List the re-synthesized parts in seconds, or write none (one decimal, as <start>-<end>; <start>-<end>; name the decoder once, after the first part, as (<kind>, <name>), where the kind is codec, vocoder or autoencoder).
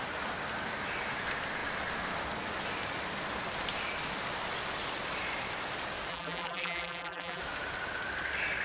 6.1-7.4 (vocoder, BigVGAN v2)